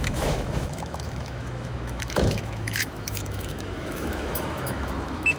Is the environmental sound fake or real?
fake